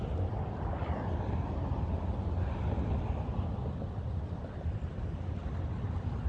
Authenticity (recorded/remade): recorded